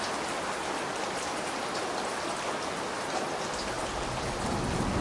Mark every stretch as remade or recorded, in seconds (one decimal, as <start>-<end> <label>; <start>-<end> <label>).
0.0-0.6 recorded; 0.6-3.6 remade; 3.6-5.0 recorded

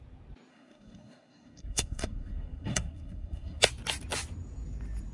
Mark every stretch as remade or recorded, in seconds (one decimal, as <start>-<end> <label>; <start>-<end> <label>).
0.0-0.5 recorded; 0.5-3.6 remade; 3.6-5.1 recorded

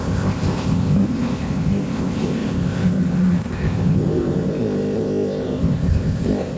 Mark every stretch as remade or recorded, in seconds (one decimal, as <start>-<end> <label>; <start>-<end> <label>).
0.0-6.6 remade

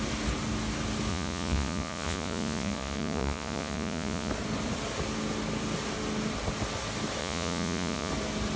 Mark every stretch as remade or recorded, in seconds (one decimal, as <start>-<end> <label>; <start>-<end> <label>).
0.0-1.1 recorded; 1.1-4.3 remade; 4.3-7.2 recorded; 7.2-8.1 remade; 8.1-8.6 recorded

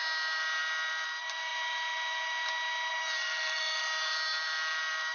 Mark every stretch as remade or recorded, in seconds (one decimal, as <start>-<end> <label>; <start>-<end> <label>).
0.0-5.1 recorded